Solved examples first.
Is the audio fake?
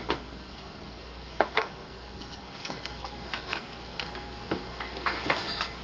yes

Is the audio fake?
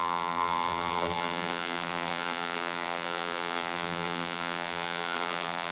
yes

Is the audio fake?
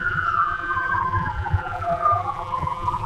yes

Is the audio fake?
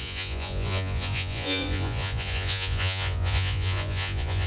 yes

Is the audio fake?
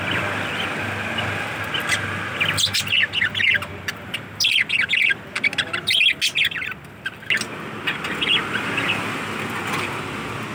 no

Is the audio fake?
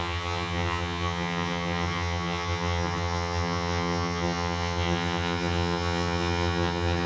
yes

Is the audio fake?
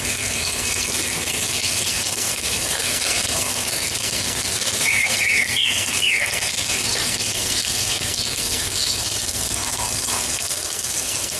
yes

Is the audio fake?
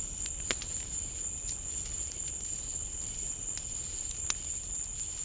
no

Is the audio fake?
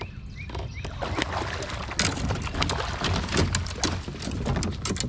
no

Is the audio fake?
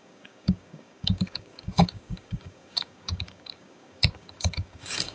yes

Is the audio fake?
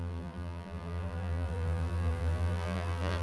yes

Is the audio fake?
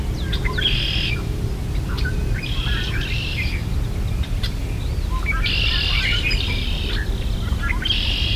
no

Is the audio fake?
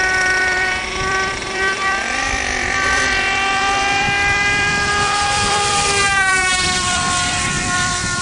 yes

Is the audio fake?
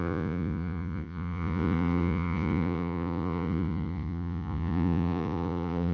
yes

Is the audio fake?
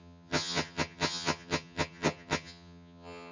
yes